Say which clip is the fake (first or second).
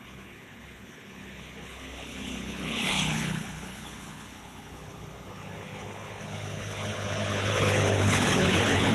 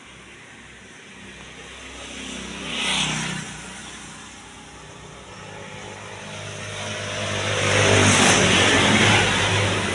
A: first